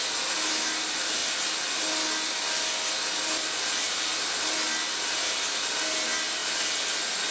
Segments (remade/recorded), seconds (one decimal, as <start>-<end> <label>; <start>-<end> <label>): 0.0-7.3 recorded